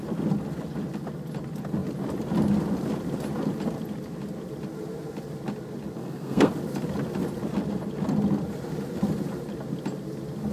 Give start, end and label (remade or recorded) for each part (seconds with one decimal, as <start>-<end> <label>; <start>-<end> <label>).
0.0-6.0 recorded; 6.0-6.5 remade; 6.5-10.5 recorded